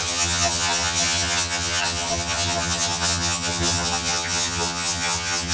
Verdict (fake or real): fake